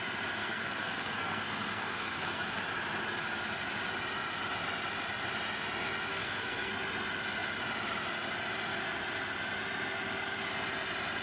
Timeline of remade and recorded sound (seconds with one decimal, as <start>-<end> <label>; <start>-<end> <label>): 0.0-0.4 recorded; 0.4-2.6 remade; 2.6-6.1 recorded; 6.1-6.7 remade; 6.7-11.2 recorded